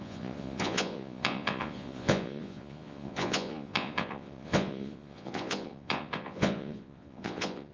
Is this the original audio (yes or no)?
no